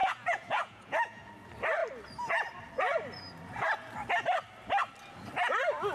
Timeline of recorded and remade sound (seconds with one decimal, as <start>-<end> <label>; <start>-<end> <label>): 0.0-1.3 remade; 1.3-5.9 recorded

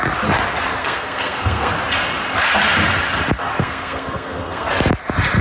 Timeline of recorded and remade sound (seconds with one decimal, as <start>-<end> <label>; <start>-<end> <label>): 0.0-0.8 recorded; 0.8-1.7 remade; 1.7-3.5 recorded; 3.5-4.7 remade; 4.7-5.4 recorded